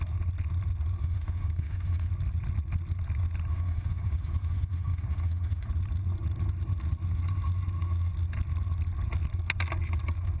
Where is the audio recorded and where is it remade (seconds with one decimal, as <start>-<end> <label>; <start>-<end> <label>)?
0.0-1.0 recorded; 1.0-2.1 remade; 2.1-3.5 recorded; 3.5-5.7 remade; 5.7-10.4 recorded